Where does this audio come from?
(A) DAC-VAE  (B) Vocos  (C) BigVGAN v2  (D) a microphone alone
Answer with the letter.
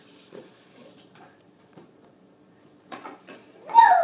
B